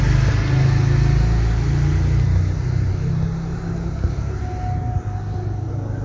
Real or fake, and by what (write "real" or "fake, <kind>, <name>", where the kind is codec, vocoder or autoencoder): real